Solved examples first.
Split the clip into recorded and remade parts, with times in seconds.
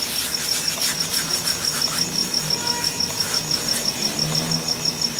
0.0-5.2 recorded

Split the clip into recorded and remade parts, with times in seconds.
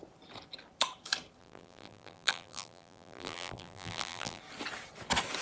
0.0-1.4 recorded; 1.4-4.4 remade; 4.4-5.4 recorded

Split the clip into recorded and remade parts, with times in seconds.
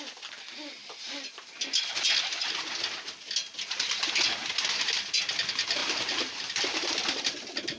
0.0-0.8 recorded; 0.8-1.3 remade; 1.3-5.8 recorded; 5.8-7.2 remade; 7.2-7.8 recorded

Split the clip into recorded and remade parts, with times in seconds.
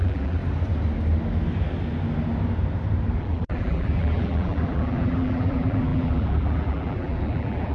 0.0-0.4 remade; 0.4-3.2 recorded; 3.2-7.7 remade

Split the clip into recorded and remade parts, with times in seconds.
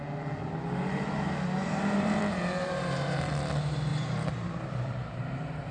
0.0-1.6 recorded; 1.6-2.2 remade; 2.2-2.6 recorded; 2.6-3.3 remade; 3.3-3.9 recorded; 3.9-5.7 remade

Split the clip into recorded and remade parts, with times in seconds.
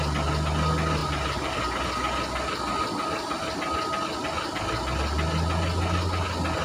0.0-1.0 recorded; 1.0-1.8 remade; 1.8-6.6 recorded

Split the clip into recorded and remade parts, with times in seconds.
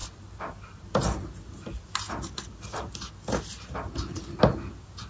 0.0-5.1 recorded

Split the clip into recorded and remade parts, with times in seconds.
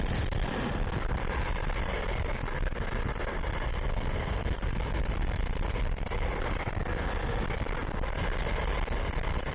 0.0-9.5 remade